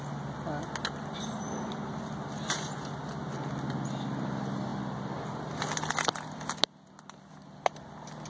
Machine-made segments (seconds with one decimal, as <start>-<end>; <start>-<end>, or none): none